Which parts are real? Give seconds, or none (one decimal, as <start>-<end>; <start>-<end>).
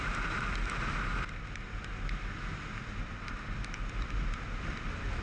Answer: 2.5-3.9